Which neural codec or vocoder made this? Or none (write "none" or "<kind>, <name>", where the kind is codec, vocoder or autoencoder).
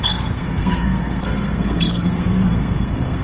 codec, SNAC